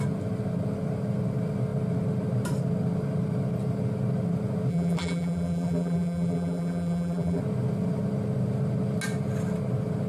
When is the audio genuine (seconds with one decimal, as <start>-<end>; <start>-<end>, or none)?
0.0-4.7; 7.4-10.1